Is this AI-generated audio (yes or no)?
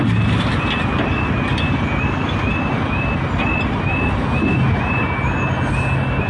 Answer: no